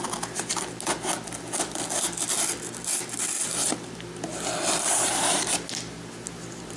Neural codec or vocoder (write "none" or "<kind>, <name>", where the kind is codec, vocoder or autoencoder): none